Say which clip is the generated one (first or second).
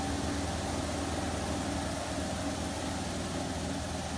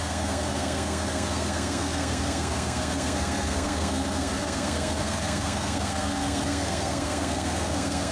second